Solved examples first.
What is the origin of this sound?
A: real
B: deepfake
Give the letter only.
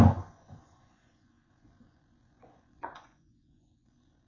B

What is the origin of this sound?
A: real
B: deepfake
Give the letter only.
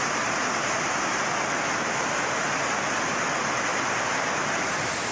A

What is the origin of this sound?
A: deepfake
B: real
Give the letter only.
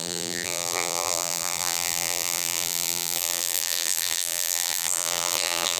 A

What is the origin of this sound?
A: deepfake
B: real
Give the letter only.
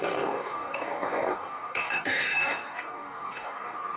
A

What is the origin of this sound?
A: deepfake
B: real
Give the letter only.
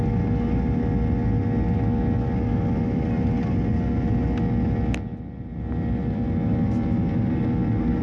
B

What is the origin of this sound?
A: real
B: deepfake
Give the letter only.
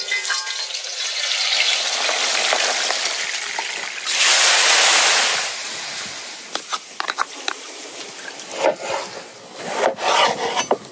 A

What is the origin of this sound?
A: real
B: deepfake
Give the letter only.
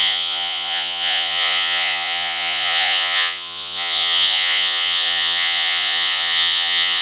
B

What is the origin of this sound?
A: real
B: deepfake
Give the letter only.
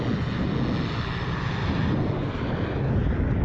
A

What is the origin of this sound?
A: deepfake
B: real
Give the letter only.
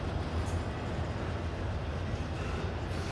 B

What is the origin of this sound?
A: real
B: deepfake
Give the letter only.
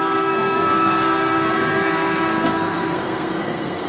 B